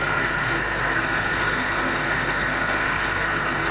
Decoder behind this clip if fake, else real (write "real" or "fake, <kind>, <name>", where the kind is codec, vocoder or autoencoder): fake, codec, SNAC